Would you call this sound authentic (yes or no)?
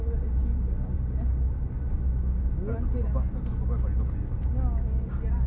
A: yes